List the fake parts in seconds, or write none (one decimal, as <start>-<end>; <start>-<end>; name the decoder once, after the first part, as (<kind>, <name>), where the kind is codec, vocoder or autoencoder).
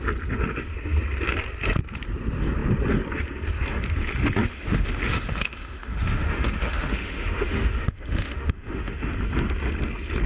4.4-9.1 (autoencoder, DAC-VAE)